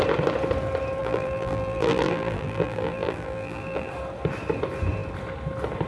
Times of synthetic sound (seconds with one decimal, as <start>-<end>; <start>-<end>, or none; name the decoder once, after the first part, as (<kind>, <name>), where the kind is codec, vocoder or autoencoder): 1.0-3.9 (vocoder, BigVGAN v2)